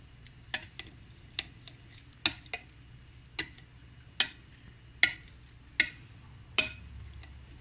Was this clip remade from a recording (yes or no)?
no